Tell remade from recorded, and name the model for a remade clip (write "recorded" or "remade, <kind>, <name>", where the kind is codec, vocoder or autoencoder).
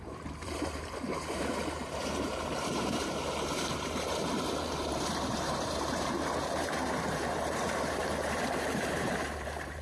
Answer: remade, vocoder, BigVGAN v2